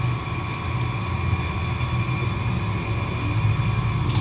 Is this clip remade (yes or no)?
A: no